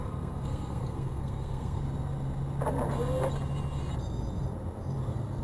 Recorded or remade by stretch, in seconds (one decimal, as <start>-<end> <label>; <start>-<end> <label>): 0.0-1.8 remade; 1.8-5.4 recorded